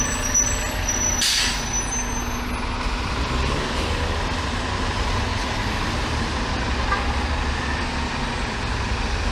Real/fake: real